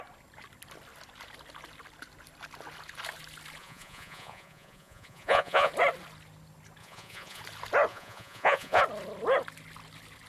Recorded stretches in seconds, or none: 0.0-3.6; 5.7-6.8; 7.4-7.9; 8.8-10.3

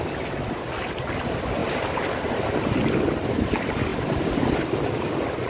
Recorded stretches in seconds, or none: 0.0-5.5

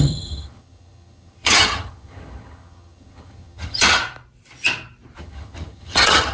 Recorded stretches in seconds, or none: 4.0-5.2

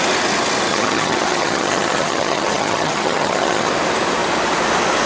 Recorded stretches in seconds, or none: 0.0-0.7; 3.7-5.1

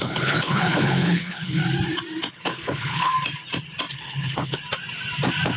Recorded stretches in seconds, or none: 1.6-2.3; 3.1-3.9; 4.6-5.6